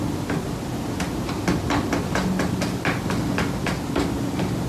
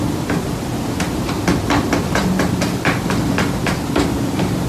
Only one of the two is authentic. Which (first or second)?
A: first